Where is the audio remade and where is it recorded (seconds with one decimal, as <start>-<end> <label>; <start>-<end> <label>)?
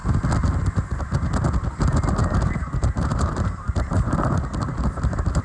0.0-2.2 recorded; 2.2-5.4 remade